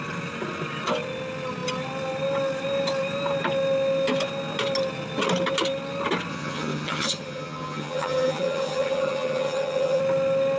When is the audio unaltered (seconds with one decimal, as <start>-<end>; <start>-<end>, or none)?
0.0-6.3; 10.0-10.6